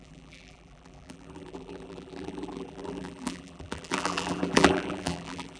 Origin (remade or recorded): remade